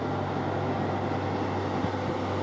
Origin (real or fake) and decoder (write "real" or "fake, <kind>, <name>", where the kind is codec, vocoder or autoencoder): real